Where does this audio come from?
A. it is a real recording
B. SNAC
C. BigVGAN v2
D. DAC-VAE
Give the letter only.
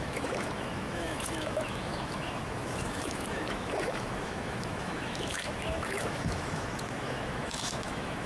D